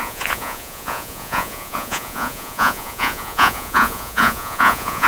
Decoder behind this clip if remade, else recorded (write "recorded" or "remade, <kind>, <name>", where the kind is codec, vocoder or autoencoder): remade, vocoder, Vocos